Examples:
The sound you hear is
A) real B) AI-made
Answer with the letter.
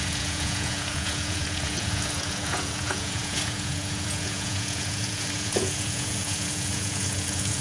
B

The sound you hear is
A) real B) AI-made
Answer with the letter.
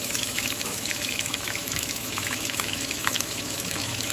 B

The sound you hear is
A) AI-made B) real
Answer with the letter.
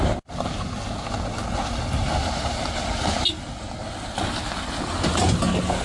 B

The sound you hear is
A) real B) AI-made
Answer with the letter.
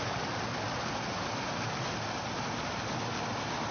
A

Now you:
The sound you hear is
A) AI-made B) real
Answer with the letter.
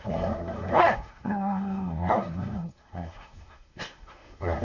A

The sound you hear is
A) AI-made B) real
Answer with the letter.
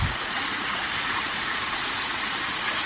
A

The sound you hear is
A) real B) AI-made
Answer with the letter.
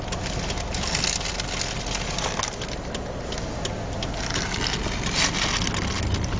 A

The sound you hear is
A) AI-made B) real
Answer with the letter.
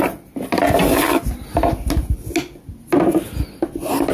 B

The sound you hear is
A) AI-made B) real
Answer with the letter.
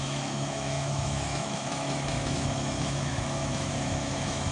A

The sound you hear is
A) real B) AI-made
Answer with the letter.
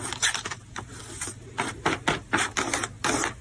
A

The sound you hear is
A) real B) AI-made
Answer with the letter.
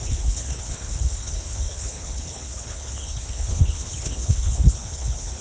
B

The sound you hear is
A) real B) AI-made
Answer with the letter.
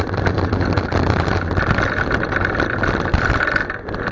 A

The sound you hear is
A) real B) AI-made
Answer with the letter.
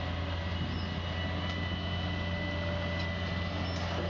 A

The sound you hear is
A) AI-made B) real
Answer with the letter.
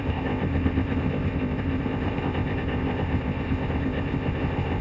A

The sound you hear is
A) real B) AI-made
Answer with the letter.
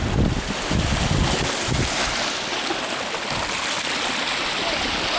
A